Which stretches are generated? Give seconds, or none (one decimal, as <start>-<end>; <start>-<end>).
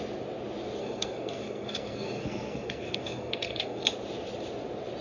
0.8-3.8